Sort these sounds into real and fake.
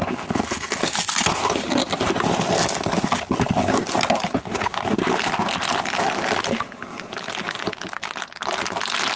real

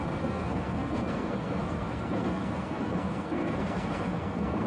fake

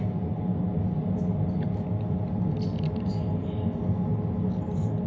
real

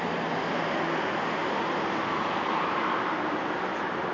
real